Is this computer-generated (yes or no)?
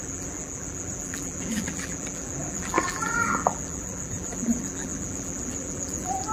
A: yes